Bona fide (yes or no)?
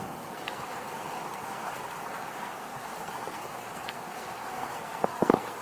no